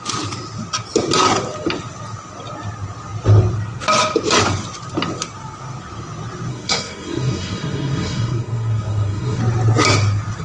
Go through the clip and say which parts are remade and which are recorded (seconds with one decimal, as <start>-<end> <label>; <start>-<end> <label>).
0.0-6.5 recorded; 6.5-9.4 remade; 9.4-10.4 recorded